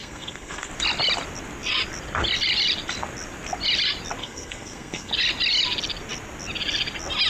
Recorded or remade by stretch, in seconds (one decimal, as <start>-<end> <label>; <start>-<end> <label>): 0.0-0.7 remade; 0.7-4.2 recorded; 4.2-5.1 remade; 5.1-7.3 recorded

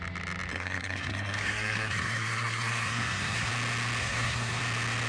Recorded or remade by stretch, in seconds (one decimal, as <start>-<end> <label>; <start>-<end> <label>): 0.0-0.5 recorded; 0.5-3.5 remade; 3.5-4.0 recorded; 4.0-4.6 remade; 4.6-5.1 recorded